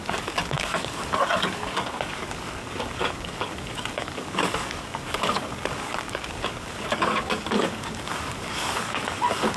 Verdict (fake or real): fake